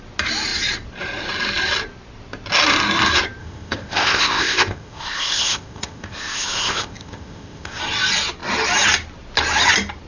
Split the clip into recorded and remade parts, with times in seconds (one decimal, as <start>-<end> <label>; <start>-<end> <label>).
0.0-3.4 recorded; 3.4-7.8 remade; 7.8-10.1 recorded